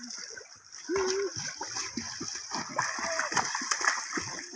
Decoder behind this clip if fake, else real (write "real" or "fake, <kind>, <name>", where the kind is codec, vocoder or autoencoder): real